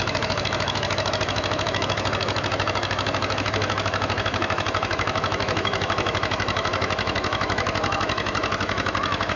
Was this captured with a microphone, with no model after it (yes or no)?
no